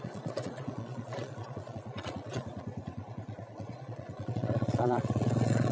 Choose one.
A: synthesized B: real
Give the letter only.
A